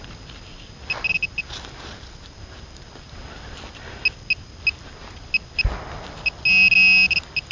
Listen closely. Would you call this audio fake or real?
real